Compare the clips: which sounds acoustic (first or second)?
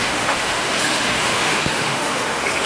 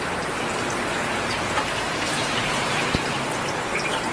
second